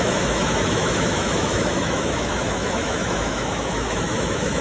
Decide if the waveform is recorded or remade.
remade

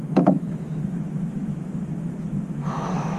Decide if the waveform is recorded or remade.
remade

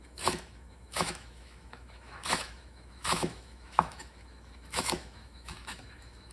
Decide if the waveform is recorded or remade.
remade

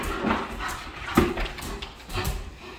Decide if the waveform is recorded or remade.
recorded